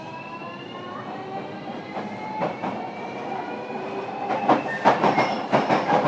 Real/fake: fake